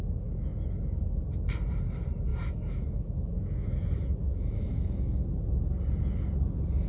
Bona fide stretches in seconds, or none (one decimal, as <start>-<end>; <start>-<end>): 0.0-2.3; 5.2-6.9